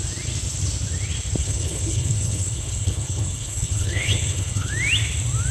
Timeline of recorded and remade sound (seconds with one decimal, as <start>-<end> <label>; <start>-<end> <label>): 0.0-1.4 recorded; 1.4-4.7 remade; 4.7-5.5 recorded